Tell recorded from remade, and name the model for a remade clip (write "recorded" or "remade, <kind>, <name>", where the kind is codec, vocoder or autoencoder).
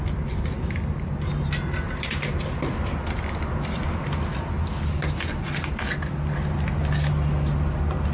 recorded